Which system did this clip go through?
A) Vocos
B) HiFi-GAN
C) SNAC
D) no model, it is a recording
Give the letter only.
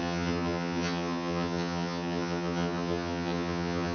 B